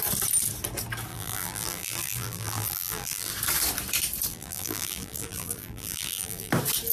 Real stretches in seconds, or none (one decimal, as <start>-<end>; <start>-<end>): 0.0-1.1; 3.3-4.3; 6.5-6.9